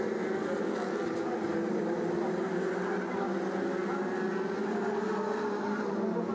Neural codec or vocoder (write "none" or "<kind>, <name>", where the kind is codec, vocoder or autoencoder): none